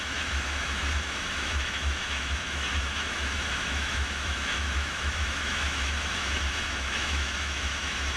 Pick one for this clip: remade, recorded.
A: remade